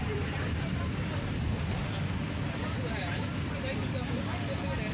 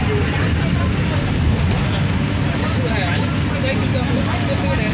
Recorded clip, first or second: second